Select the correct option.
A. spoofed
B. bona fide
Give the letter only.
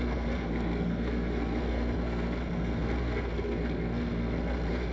A